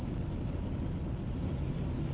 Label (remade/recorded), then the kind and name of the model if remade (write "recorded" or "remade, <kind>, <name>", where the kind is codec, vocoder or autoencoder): recorded